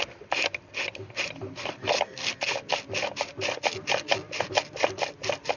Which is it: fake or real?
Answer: real